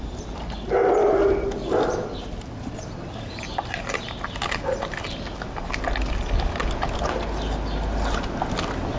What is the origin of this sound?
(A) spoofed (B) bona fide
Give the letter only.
B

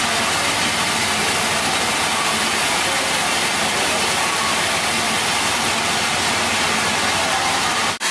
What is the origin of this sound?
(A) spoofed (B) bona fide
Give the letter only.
B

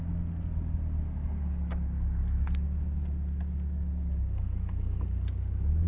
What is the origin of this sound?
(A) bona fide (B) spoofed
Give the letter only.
A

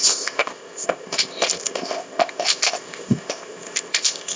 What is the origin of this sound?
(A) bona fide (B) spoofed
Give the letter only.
B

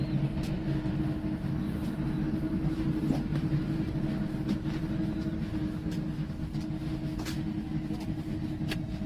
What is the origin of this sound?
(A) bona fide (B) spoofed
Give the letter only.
A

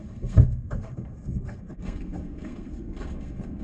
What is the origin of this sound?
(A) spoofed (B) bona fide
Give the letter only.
A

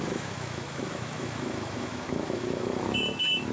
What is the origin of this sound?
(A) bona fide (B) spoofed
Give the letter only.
B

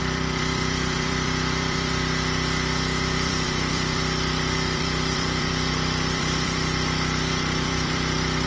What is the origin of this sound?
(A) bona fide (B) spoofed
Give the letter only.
B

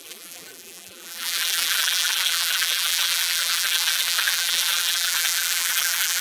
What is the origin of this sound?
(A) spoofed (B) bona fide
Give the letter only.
A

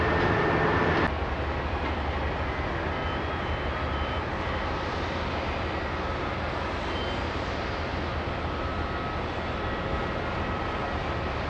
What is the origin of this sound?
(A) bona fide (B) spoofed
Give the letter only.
A